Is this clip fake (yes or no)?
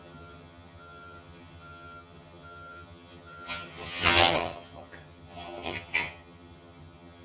yes